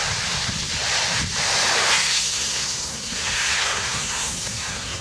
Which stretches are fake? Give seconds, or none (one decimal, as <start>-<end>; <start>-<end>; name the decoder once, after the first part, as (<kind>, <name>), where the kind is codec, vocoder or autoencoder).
1.9-5.0 (codec, SNAC)

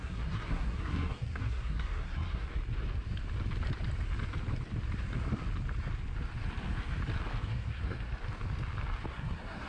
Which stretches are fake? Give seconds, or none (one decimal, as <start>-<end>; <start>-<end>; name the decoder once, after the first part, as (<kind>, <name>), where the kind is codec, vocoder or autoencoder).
0.0-2.5 (codec, SNAC); 7.4-8.1; 9.1-9.7

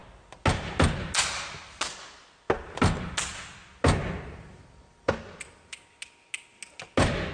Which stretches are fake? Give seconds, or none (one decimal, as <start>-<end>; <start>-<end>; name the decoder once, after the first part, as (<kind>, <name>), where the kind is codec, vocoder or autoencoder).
none

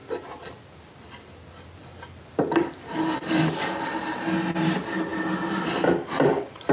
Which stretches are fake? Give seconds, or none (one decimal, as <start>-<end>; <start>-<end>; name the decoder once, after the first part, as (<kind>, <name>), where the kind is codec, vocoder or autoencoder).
none